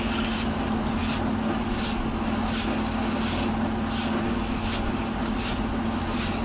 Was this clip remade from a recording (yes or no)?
no